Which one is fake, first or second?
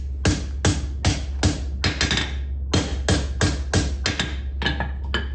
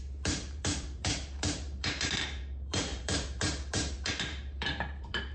second